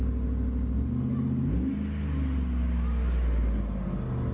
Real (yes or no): yes